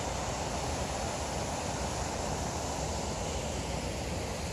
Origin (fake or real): real